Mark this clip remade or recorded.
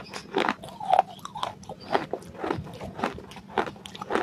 recorded